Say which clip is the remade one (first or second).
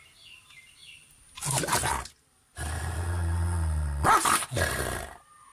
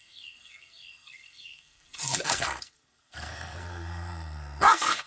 second